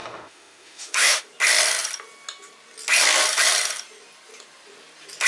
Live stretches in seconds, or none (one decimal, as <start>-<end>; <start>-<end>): 1.2-5.3